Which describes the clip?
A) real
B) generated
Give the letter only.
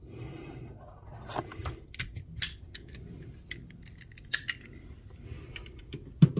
A